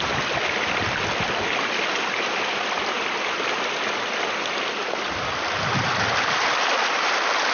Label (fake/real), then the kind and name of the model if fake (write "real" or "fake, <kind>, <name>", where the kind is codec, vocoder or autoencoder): real